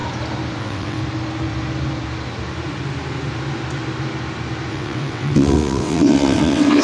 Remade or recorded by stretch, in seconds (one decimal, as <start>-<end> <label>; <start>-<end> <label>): 0.0-0.6 recorded; 0.6-1.0 remade; 1.0-4.7 recorded; 4.7-6.8 remade